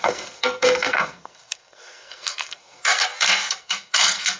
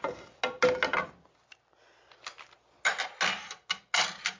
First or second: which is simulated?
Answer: first